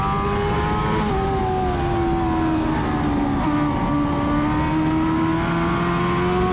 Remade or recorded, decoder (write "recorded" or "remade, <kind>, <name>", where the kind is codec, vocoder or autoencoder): recorded